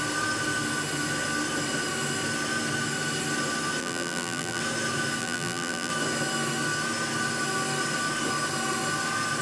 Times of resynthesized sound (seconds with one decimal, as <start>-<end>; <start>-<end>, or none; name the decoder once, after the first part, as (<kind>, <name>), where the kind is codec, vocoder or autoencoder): 3.8-4.6 (vocoder, BigVGAN v2); 5.2-5.9